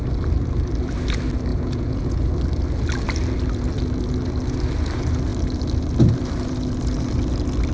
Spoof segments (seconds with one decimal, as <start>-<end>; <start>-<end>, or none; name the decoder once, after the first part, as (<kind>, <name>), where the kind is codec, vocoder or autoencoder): 1.5-2.3 (vocoder, Vocos)